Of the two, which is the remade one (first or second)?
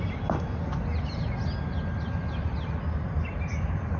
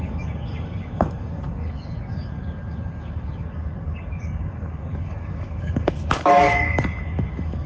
second